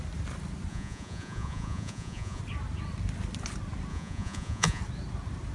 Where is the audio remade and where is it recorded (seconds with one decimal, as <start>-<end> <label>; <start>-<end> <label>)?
0.0-0.7 recorded; 0.7-2.4 remade; 2.4-3.9 recorded; 3.9-4.8 remade; 4.8-5.5 recorded